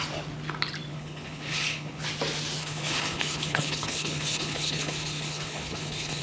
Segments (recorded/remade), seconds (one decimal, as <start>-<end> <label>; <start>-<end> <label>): 0.0-0.9 recorded; 0.9-2.0 remade; 2.0-2.6 recorded; 2.6-6.2 remade